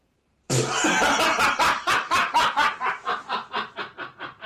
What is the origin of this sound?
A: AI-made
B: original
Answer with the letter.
A